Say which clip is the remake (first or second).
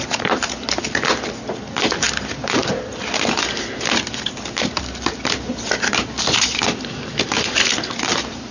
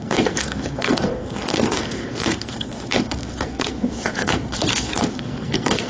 second